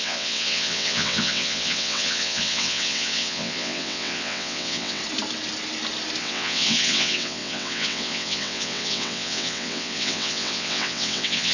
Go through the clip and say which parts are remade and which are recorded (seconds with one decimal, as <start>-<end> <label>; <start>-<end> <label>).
0.0-5.0 remade; 5.0-6.2 recorded; 6.2-11.5 remade